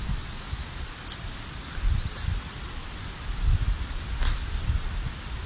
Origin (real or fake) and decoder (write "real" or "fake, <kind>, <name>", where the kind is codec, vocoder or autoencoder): real